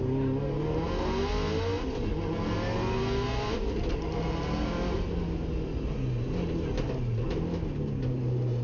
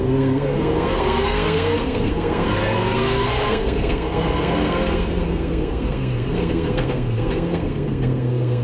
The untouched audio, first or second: first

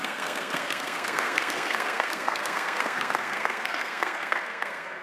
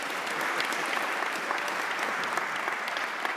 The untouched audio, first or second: second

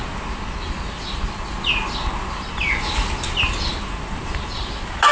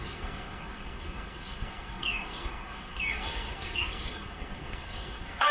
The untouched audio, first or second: first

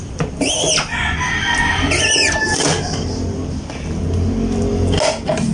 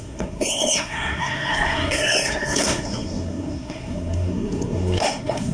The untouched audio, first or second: first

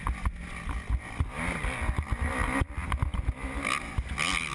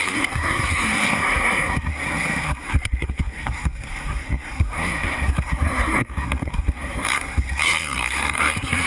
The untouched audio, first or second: first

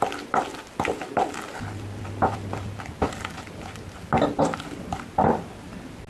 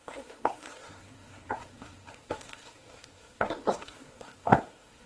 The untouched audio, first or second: first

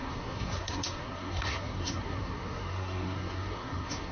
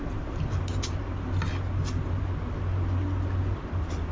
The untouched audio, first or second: second